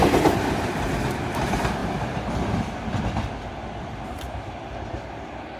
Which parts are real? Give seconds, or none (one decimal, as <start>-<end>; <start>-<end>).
0.0-5.6